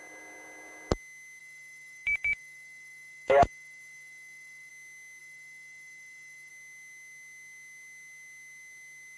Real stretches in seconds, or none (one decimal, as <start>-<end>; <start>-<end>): 0.0-1.4; 4.7-5.2; 6.5-9.2